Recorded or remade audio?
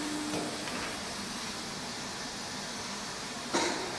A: recorded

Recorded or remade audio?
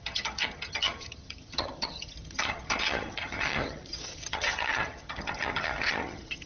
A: remade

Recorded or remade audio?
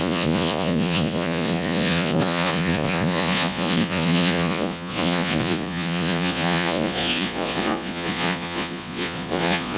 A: remade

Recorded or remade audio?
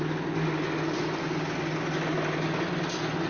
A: recorded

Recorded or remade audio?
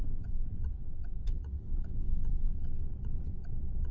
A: remade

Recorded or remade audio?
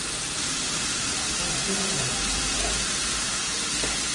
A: remade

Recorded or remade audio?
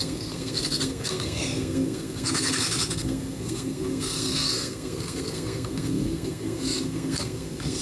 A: remade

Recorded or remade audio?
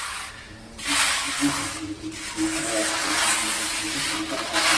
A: recorded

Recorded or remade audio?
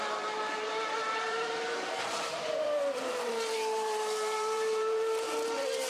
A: remade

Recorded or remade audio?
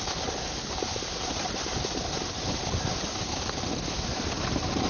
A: recorded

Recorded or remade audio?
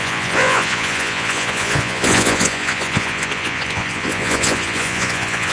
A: remade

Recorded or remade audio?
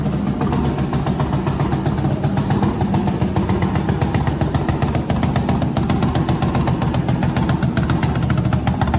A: recorded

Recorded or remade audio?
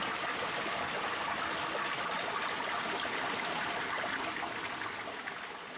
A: recorded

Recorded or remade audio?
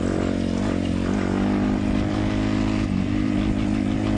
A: recorded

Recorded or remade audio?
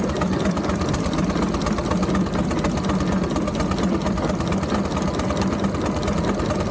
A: recorded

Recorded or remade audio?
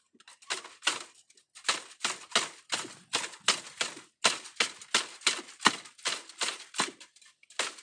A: recorded